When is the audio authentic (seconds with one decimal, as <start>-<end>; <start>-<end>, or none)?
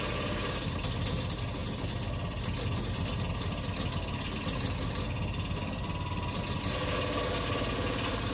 0.0-8.3